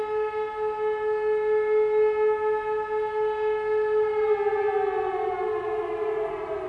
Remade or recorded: recorded